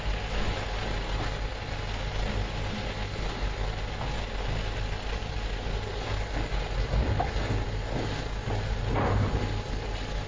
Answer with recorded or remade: recorded